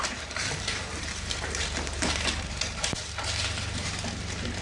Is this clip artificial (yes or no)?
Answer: yes